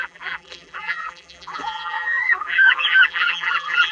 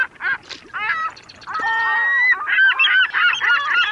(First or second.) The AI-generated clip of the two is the first